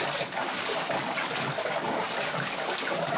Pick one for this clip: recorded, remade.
remade